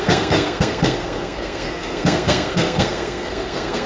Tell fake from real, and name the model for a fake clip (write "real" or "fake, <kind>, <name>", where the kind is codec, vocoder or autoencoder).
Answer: fake, codec, SNAC